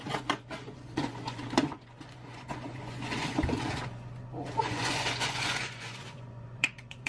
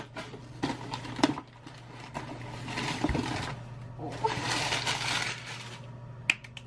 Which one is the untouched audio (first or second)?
second